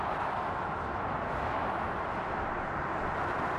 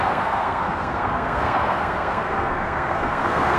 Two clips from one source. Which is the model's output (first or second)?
second